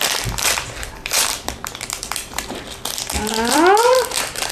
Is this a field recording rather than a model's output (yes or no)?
no